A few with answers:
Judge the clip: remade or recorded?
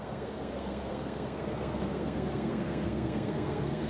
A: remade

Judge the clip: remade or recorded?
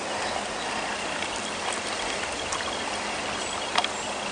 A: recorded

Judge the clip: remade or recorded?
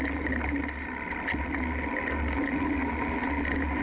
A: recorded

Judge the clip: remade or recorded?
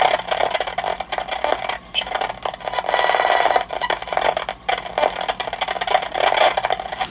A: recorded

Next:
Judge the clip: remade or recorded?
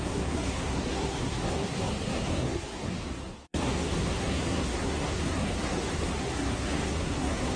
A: remade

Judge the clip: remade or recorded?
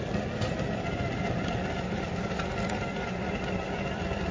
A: recorded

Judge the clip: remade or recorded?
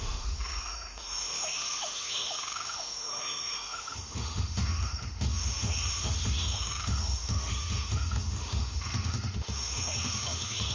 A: remade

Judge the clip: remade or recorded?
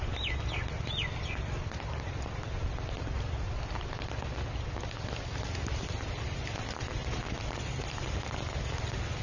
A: recorded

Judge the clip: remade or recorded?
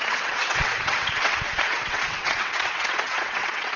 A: remade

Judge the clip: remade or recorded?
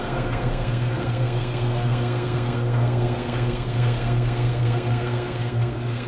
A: remade